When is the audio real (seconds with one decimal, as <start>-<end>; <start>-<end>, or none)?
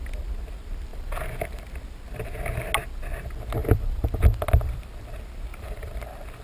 0.0-0.9; 1.6-3.6; 4.9-5.5; 6.0-6.4